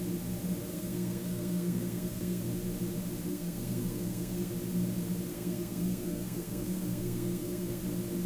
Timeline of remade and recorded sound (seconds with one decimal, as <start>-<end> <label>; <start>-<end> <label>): 0.0-0.7 recorded; 0.7-2.4 remade; 2.4-3.3 recorded; 3.3-4.5 remade; 4.5-5.3 recorded; 5.3-7.8 remade; 7.8-8.3 recorded